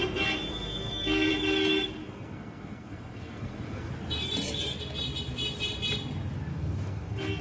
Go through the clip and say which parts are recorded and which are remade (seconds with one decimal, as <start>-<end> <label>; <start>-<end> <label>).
0.0-0.5 recorded; 0.5-1.3 remade; 1.3-2.0 recorded; 2.0-3.9 remade; 3.9-6.5 recorded; 6.5-7.4 remade